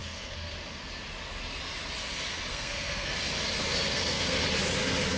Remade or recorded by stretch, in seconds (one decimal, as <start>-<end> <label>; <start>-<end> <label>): 0.0-0.5 remade; 0.5-2.5 recorded; 2.5-3.1 remade; 3.1-3.9 recorded; 3.9-4.4 remade; 4.4-5.2 recorded